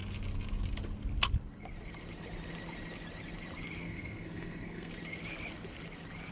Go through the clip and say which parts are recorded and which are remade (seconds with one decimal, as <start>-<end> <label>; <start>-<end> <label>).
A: 0.0-3.8 recorded; 3.8-4.9 remade; 4.9-6.3 recorded